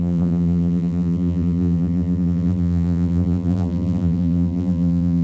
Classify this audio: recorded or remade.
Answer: remade